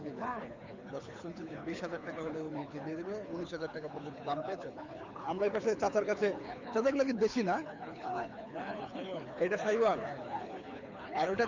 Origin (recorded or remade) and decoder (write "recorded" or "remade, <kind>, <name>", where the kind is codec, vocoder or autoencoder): remade, codec, HILCodec